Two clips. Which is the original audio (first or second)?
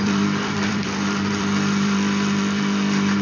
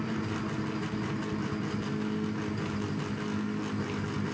second